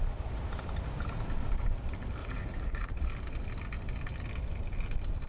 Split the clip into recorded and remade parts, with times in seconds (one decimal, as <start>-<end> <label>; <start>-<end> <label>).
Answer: 0.0-2.2 recorded; 2.2-3.1 remade; 3.1-5.3 recorded